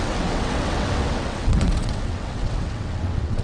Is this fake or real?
fake